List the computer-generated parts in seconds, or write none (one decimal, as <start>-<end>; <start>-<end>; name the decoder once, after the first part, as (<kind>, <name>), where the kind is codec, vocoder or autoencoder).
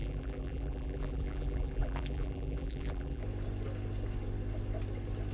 0.0-3.2 (vocoder, BigVGAN v2)